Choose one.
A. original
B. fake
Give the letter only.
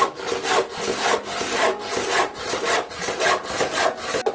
A